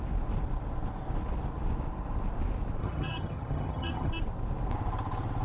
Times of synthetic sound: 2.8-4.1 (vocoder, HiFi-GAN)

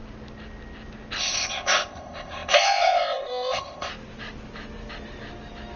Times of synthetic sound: 1.2-3.9 (codec, ZipCodec)

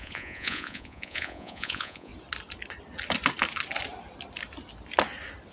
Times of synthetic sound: 0.0-2.1 (vocoder, Vocos)

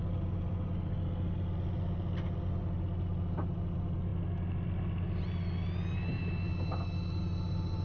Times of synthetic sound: none

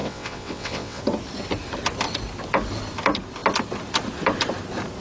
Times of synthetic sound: 0.0-1.0 (vocoder, WaveNeXt)